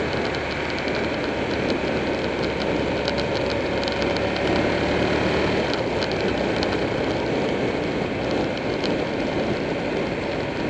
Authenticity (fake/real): real